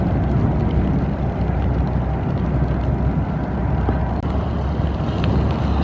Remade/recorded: recorded